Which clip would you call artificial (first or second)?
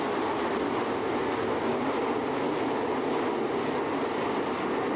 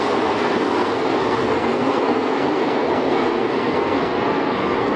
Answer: second